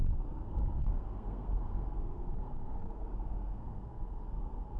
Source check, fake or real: fake